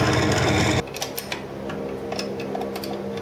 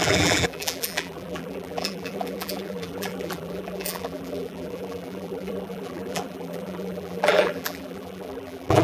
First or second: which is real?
first